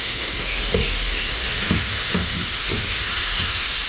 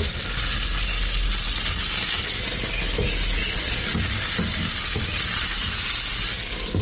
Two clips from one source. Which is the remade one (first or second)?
first